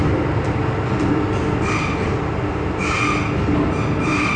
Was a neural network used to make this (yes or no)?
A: no